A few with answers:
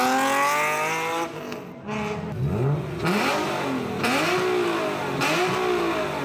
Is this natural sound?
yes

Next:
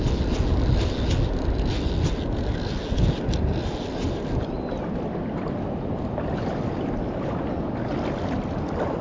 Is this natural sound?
yes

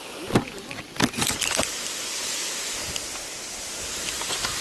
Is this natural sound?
no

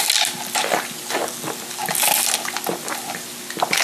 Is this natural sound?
yes